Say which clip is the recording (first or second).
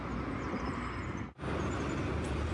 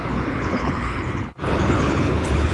first